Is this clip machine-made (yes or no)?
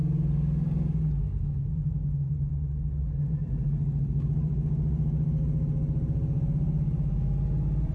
no